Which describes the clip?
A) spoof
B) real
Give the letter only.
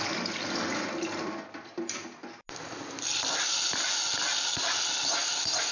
B